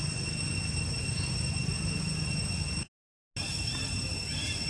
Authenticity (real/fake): real